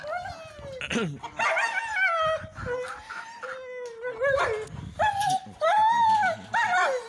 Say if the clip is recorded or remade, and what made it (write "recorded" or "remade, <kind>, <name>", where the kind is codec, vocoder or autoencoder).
recorded